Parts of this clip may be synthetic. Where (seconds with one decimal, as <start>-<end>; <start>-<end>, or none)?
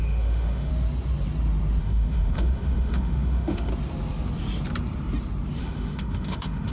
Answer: 0.0-0.7; 1.8-3.7; 5.6-6.7